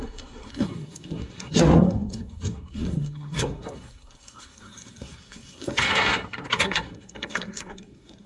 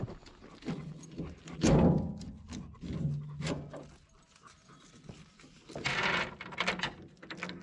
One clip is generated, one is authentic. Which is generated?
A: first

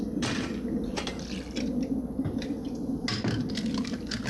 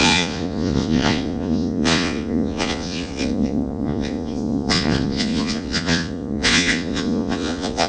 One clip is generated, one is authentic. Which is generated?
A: second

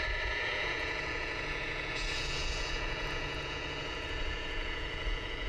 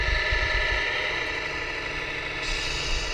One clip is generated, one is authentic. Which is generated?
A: first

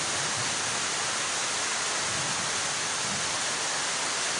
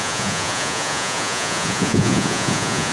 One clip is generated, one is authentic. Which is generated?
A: second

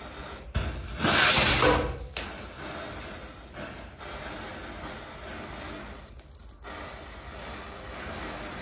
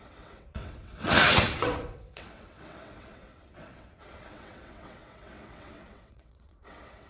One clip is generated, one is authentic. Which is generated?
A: second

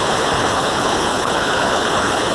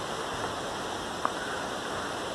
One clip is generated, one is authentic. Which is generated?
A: first